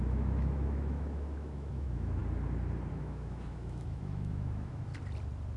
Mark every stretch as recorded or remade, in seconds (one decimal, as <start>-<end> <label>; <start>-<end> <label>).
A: 0.0-2.2 remade; 2.2-2.9 recorded; 2.9-4.9 remade; 4.9-5.6 recorded